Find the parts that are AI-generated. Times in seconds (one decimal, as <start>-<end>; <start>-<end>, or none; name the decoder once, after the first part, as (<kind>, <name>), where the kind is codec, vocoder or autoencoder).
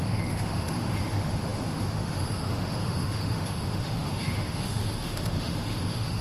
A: 0.0-6.2 (autoencoder, DAC-VAE)